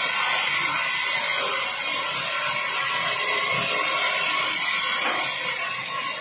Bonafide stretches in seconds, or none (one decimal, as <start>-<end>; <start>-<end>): 0.0-6.2